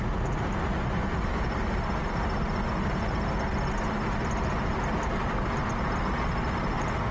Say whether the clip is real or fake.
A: real